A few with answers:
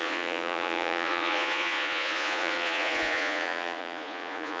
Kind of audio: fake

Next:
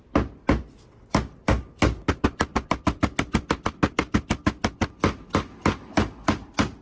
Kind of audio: real